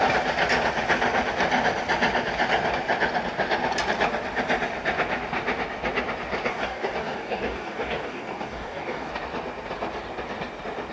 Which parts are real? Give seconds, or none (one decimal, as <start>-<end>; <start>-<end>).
0.0-6.5; 9.1-10.9